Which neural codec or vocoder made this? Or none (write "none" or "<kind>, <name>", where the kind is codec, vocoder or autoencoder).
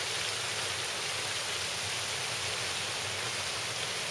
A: none